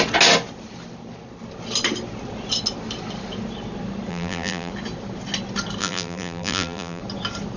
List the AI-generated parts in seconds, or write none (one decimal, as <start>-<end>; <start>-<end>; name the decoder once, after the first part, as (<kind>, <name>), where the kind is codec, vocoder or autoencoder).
4.1-4.7 (vocoder, BigVGAN v2); 5.8-7.0